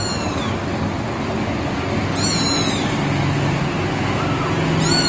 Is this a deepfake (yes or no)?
no